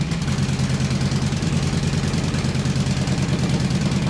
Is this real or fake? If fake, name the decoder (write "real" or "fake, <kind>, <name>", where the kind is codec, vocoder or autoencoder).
real